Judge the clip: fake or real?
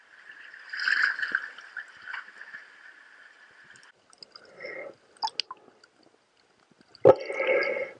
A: real